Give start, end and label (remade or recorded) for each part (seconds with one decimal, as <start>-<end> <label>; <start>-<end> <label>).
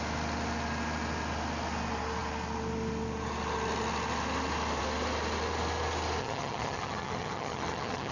0.0-6.2 recorded; 6.2-8.1 remade